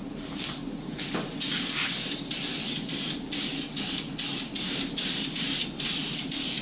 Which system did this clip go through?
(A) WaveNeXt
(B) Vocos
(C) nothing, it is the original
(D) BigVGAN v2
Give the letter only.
C